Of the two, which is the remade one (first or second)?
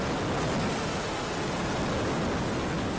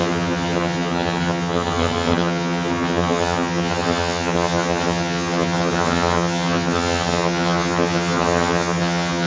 second